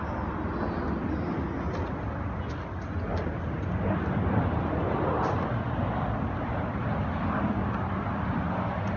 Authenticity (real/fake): real